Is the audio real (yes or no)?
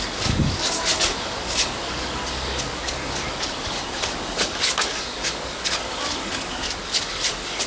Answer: no